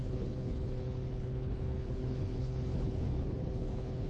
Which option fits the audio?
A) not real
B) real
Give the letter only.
A